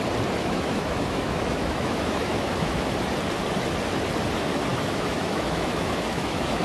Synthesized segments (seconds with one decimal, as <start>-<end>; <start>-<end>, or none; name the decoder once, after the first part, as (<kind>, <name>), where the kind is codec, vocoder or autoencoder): 0.4-2.8 (autoencoder, DAC-VAE); 4.7-6.6